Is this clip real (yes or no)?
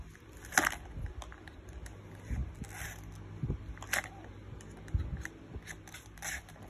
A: yes